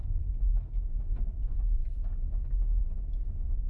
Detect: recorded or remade recorded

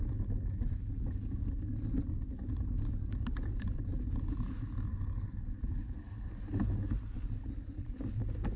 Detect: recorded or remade recorded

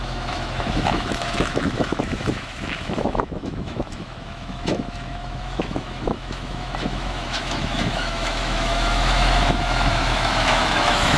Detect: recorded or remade remade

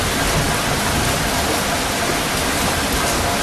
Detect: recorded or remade recorded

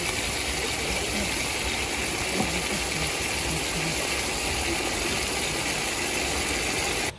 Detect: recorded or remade recorded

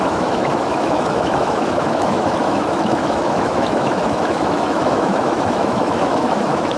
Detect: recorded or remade remade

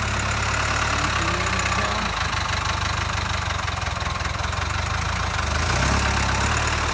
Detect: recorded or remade recorded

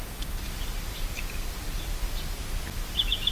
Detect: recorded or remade recorded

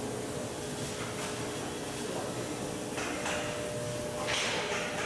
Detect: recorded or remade recorded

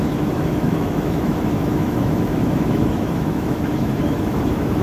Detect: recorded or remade remade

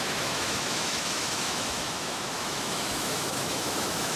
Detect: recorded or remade remade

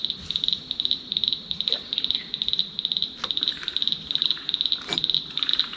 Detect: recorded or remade recorded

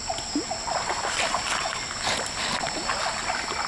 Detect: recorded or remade recorded